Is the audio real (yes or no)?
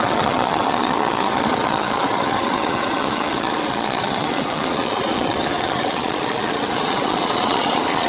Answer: no